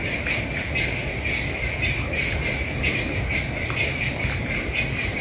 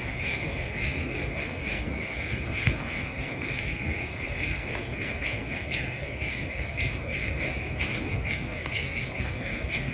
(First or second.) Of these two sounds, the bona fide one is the first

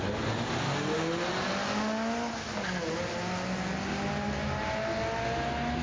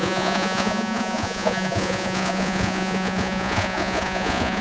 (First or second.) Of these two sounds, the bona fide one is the first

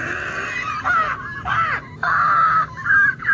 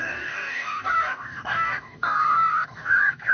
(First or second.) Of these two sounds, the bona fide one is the first